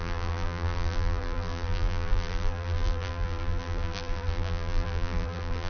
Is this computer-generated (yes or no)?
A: yes